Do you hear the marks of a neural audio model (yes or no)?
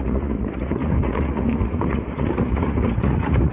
yes